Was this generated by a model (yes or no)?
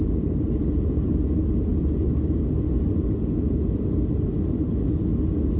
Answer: no